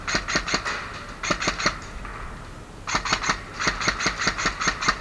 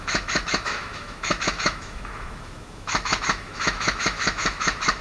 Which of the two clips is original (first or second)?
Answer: first